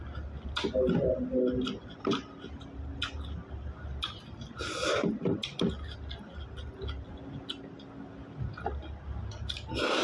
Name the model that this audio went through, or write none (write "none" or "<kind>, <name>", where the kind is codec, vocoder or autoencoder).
none